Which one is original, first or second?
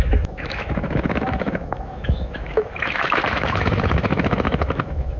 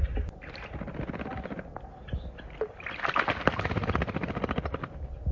second